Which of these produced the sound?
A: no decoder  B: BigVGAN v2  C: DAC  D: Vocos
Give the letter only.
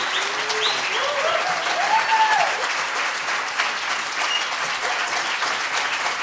A